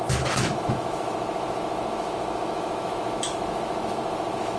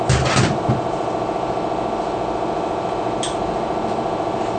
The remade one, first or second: first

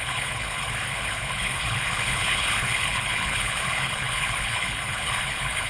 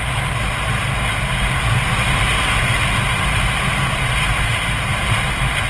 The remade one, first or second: first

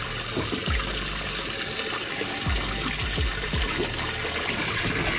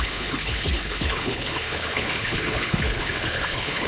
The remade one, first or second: second